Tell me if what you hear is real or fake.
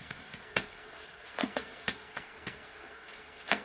fake